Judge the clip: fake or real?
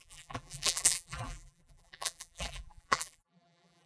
fake